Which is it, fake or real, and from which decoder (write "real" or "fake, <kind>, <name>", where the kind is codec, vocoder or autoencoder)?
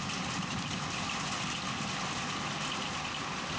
real